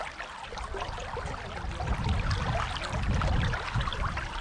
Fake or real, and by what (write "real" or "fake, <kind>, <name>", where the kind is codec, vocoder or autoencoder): real